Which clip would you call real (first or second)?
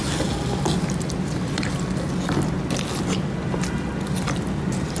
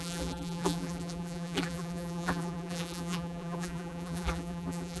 first